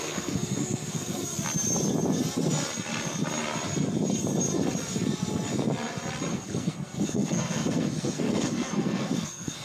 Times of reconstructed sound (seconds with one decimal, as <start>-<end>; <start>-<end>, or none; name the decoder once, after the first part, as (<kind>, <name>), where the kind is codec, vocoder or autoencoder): 0.0-1.2 (codec, SNAC); 6.3-9.6